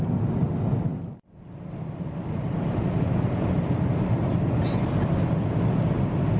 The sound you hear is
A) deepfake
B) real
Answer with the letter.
B